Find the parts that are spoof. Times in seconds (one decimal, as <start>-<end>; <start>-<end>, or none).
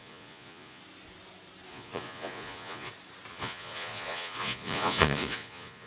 0.0-0.8; 1.7-2.9; 3.3-5.9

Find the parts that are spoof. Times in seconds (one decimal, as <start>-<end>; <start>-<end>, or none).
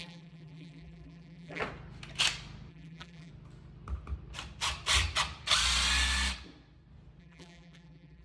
0.0-1.6; 2.7-3.3; 7.2-8.2